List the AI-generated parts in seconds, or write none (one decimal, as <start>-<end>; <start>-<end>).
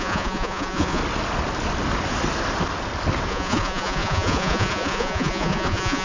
0.0-1.0; 3.3-6.0